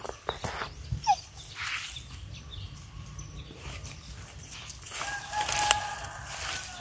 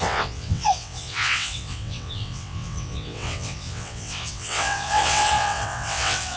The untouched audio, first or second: first